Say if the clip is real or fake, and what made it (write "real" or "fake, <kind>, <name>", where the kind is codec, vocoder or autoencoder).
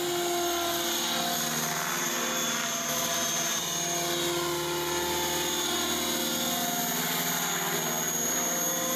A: real